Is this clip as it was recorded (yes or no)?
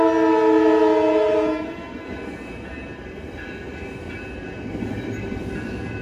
yes